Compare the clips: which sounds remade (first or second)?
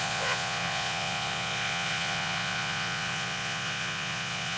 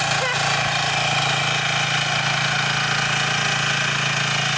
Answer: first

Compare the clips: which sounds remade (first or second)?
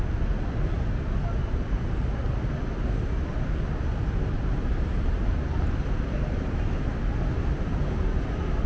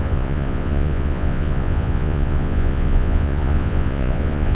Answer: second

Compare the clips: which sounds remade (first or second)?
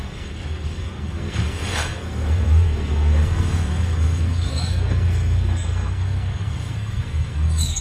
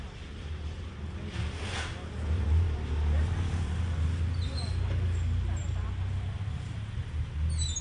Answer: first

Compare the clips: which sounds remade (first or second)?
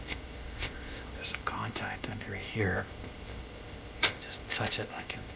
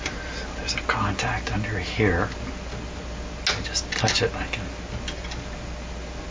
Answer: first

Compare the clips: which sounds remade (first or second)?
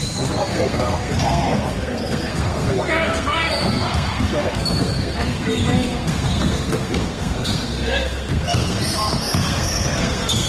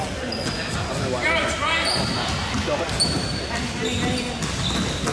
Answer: first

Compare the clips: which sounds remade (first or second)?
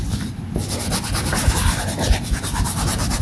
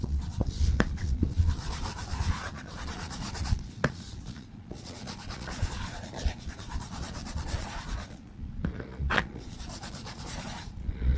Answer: second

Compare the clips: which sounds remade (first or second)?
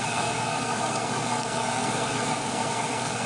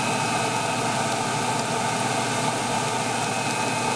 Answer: first